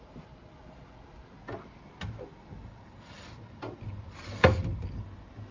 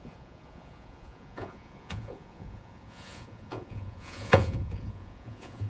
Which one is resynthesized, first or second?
second